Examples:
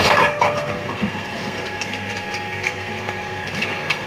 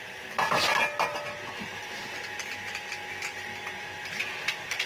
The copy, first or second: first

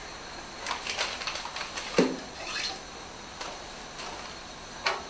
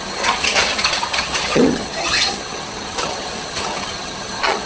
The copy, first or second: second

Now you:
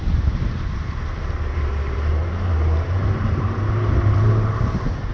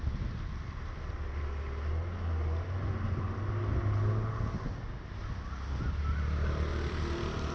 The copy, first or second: first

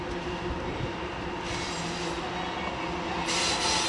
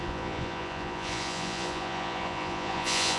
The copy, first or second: second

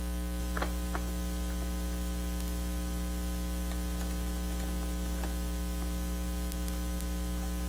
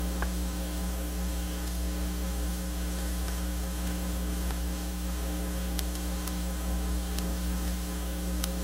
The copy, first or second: second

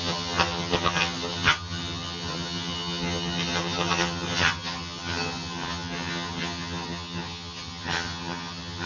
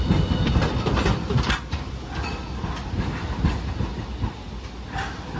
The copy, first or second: first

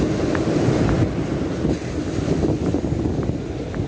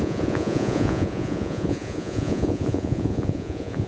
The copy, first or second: second